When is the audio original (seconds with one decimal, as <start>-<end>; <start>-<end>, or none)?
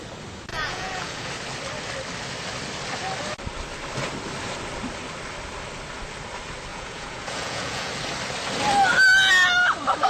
0.0-0.5; 1.3-6.7; 7.9-10.1